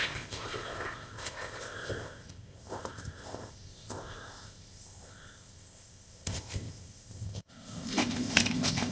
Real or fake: fake